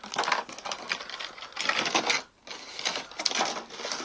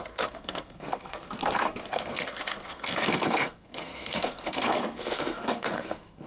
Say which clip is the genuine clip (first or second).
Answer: first